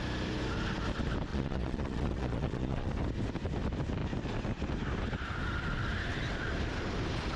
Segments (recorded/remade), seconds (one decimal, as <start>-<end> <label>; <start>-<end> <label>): 0.0-1.3 recorded; 1.3-2.9 remade; 2.9-7.4 recorded